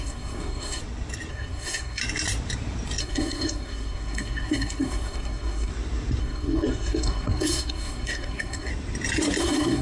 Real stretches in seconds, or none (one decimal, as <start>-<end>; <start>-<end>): 0.8-1.3; 2.0-3.0; 5.7-6.2; 8.7-9.4